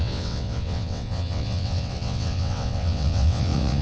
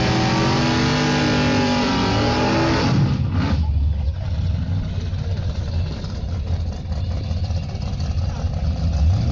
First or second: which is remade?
first